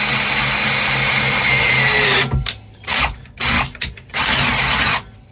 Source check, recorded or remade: recorded